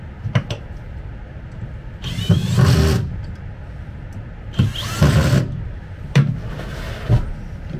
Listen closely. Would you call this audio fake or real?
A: fake